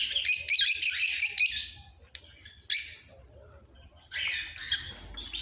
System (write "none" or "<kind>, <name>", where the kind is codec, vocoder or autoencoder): none